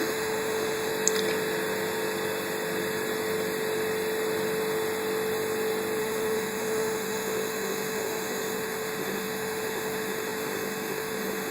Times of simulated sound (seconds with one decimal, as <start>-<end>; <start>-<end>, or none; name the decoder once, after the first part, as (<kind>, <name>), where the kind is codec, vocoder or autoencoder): 0.0-0.9 (autoencoder, DAC-VAE); 6.0-11.5